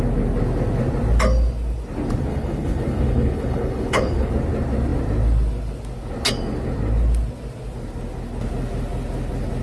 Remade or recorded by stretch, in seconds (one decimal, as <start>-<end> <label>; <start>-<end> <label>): 0.0-2.3 recorded; 2.3-4.3 remade; 4.3-9.6 recorded